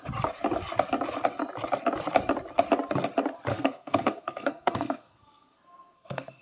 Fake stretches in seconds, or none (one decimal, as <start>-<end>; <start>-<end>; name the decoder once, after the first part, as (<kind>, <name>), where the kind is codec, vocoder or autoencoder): 3.5-6.4 (codec, SNAC)